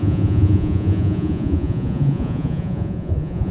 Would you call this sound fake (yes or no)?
yes